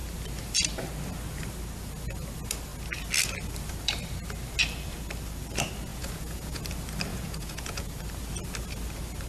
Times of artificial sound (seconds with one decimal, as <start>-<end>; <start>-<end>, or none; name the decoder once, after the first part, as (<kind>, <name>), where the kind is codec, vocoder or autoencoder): 5.9-6.6 (vocoder, Vocos); 7.1-8.0